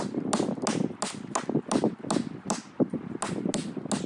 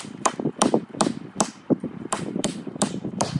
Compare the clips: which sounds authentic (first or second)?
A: first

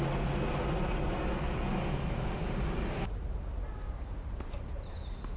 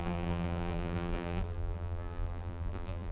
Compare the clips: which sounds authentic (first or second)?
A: first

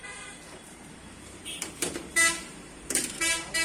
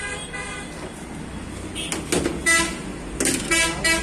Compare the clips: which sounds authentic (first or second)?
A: second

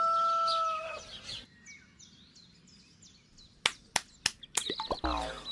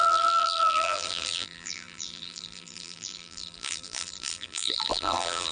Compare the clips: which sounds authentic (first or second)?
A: first